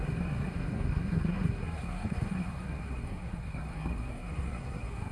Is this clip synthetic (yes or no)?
yes